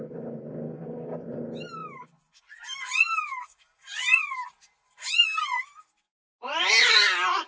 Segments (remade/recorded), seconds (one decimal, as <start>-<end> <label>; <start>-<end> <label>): 0.0-7.5 recorded

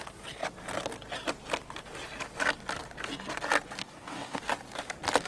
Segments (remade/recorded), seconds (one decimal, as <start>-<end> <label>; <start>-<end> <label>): 0.0-3.8 recorded; 3.8-4.4 remade; 4.4-5.3 recorded

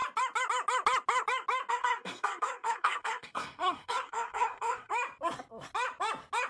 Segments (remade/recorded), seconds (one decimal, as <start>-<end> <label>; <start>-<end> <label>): 0.0-1.7 recorded; 1.7-4.9 remade; 4.9-6.5 recorded

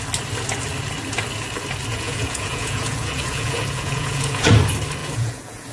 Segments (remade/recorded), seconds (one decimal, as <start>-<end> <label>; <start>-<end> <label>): 0.0-1.9 recorded; 1.9-4.5 remade; 4.5-5.0 recorded; 5.0-5.7 remade

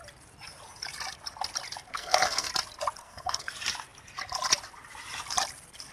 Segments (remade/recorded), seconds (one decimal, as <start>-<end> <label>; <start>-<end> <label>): 0.0-1.9 recorded; 1.9-2.5 remade; 2.5-3.0 recorded; 3.0-3.5 remade; 3.5-5.9 recorded